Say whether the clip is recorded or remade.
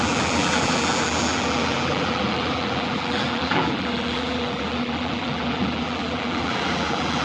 remade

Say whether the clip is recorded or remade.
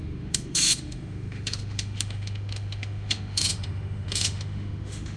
remade